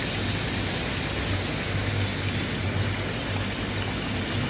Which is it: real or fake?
real